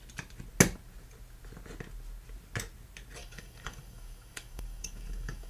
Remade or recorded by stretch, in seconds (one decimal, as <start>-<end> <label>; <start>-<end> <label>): 0.0-3.2 recorded; 3.2-5.5 remade